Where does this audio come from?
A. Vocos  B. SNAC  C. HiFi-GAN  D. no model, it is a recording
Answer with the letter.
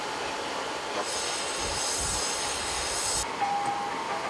D